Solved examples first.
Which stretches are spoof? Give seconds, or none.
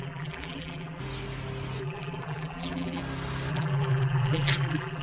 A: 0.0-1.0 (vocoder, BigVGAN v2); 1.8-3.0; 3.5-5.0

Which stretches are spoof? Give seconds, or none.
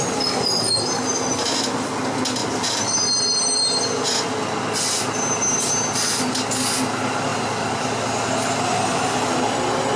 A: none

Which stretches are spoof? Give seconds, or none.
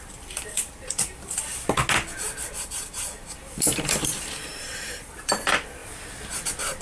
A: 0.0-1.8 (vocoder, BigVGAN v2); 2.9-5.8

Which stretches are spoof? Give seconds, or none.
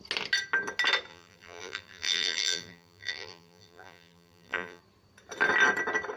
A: 1.1-4.8 (vocoder, BigVGAN v2)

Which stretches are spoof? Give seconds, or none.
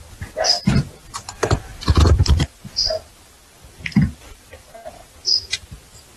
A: 0.0-1.7 (vocoder, BigVGAN v2); 2.3-5.0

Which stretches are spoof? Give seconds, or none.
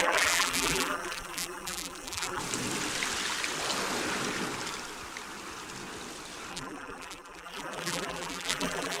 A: 0.0-2.4 (vocoder, BigVGAN v2); 6.5-9.0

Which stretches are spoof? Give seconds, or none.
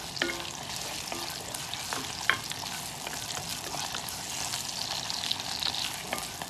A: none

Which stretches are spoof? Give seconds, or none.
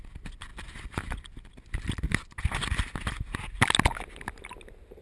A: none